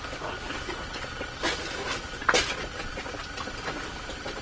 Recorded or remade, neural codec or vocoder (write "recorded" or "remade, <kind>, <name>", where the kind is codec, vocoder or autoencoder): recorded